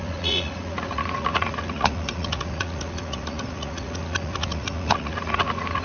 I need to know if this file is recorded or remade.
remade